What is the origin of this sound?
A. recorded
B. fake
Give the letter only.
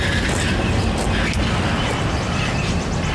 A